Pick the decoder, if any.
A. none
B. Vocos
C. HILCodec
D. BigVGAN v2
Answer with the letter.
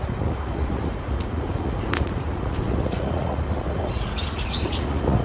B